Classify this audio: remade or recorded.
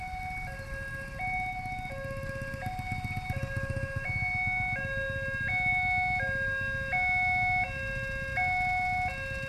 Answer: recorded